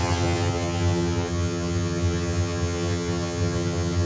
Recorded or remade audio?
remade